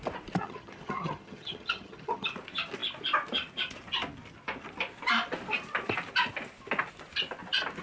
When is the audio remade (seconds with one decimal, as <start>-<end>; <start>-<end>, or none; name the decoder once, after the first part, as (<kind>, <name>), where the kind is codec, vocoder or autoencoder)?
0.4-2.3 (vocoder, HiFi-GAN)